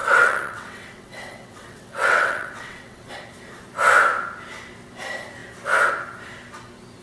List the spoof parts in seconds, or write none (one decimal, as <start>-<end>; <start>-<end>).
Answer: 0.0-3.1